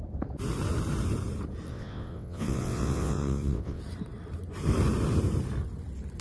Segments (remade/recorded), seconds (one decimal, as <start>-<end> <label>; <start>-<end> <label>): 0.0-1.7 recorded; 1.7-3.8 remade; 3.8-6.2 recorded